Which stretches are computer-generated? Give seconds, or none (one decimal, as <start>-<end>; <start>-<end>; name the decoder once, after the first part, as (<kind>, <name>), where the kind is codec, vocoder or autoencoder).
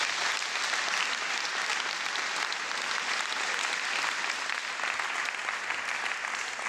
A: none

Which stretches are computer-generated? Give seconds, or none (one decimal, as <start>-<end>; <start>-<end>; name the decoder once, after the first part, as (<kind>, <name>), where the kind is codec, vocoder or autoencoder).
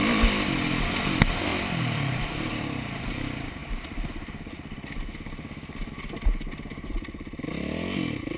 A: 1.5-2.5 (vocoder, BigVGAN v2)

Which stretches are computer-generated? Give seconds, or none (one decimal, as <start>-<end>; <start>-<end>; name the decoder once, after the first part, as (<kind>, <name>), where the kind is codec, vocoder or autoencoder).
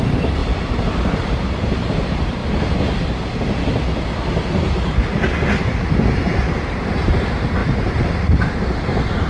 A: 0.0-2.4 (vocoder, BigVGAN v2); 5.6-9.3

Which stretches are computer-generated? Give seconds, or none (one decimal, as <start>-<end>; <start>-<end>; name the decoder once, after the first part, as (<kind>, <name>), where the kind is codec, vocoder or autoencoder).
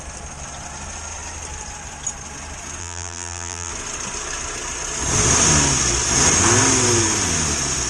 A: 2.8-3.7 (vocoder, BigVGAN v2)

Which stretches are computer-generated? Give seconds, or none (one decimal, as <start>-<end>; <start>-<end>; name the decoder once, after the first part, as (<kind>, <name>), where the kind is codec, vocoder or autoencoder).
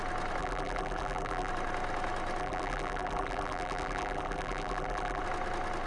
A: 0.4-1.5 (vocoder, BigVGAN v2); 2.4-5.2